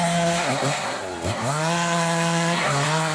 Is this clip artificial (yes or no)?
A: yes